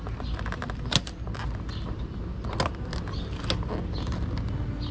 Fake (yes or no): no